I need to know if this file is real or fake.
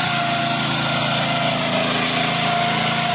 real